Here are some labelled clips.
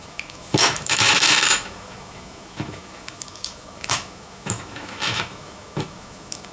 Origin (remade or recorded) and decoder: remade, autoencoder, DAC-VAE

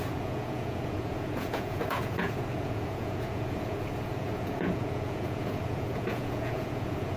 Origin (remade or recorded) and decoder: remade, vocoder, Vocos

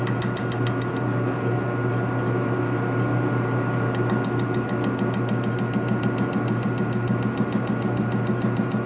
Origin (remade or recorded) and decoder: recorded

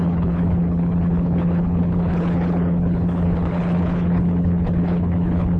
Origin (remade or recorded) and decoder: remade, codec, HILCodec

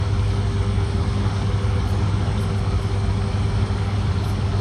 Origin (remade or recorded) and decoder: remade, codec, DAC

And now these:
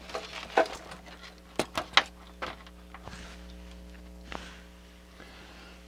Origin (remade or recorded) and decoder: recorded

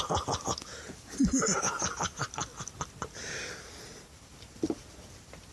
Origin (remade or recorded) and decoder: recorded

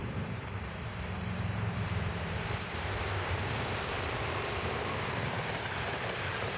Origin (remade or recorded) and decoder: remade, vocoder, BigVGAN v2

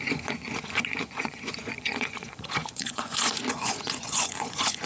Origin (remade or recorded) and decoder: remade, vocoder, Vocos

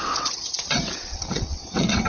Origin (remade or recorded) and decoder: remade, vocoder, WaveNeXt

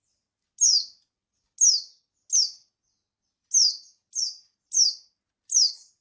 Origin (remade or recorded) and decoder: recorded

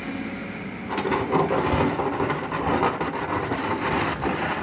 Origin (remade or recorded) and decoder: recorded